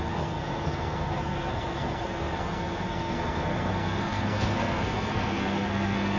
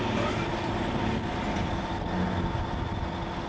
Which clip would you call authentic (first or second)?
second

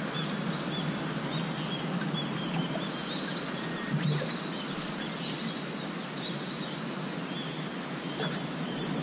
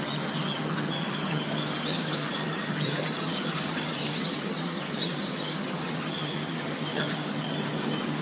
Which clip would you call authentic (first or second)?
first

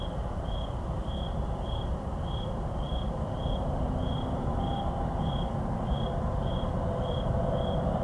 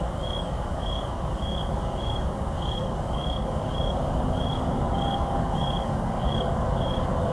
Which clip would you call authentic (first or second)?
first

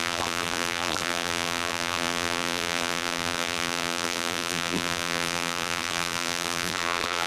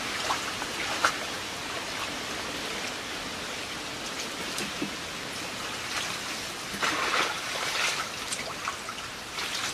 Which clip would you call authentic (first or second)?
second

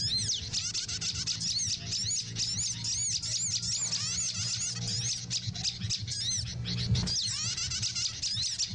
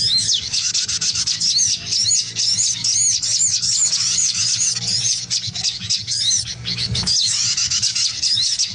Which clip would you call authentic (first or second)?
first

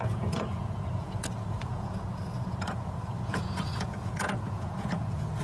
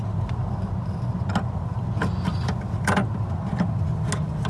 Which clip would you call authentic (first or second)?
second